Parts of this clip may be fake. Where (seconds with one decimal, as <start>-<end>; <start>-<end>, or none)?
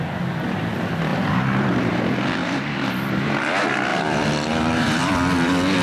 1.1-1.9; 2.4-2.9; 3.9-5.1